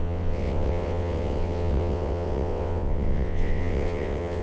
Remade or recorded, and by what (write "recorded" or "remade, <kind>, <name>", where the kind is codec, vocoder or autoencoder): remade, vocoder, WaveNeXt